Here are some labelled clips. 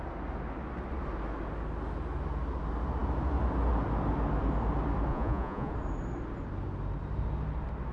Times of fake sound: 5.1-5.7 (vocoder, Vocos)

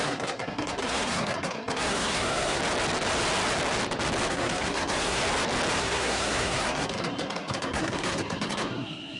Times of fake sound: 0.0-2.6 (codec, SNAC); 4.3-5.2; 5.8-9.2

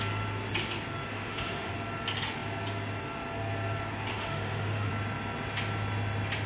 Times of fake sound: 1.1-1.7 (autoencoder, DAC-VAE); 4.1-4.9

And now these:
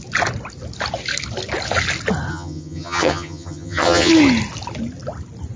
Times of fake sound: 2.3-4.1 (vocoder, HiFi-GAN)

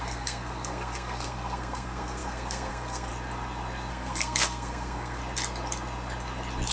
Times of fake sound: 0.0-3.1 (codec, SNAC); 3.9-5.2